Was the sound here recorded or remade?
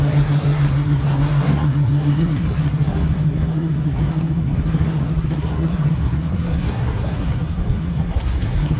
remade